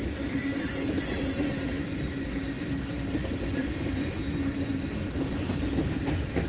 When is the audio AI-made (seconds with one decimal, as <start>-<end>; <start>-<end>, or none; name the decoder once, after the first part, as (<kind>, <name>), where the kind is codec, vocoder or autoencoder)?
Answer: 3.6-4.2 (vocoder, BigVGAN v2)